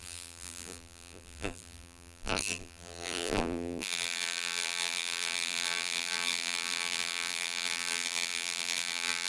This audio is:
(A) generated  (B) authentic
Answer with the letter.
A